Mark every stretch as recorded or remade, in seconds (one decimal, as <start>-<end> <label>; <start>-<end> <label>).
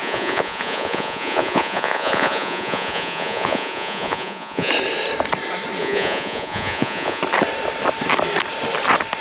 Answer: 0.0-4.7 remade; 4.7-5.8 recorded; 5.8-7.2 remade; 7.2-9.2 recorded